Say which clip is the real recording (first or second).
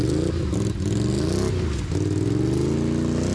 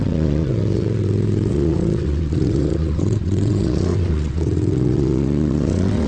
first